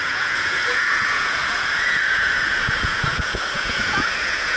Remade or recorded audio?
remade